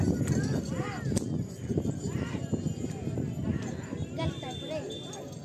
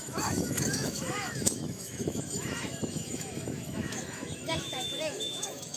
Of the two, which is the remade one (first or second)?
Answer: second